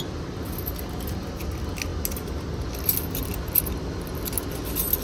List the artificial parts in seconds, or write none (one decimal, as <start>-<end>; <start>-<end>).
none